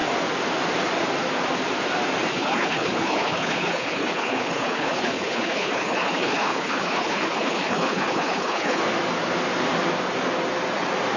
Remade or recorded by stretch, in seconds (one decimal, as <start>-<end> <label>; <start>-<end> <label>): 0.0-2.3 recorded; 2.3-8.8 remade; 8.8-11.2 recorded